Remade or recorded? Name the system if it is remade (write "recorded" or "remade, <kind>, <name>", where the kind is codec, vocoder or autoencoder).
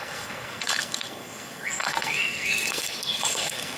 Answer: remade, codec, SNAC